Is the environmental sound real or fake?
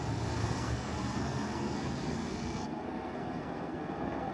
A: fake